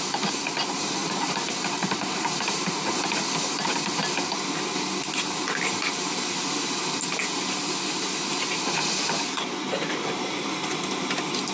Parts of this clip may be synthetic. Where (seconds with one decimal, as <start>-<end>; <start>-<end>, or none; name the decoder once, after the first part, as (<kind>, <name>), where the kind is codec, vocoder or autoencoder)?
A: 1.0-2.8 (vocoder, BigVGAN v2)